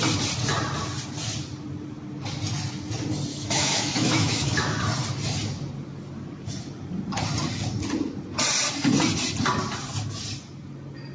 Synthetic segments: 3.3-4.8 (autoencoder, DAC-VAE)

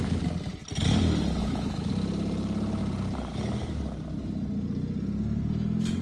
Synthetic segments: 1.4-1.9 (autoencoder, DAC-VAE)

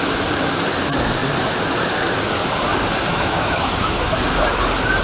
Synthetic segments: 3.1-4.1 (autoencoder, DAC-VAE)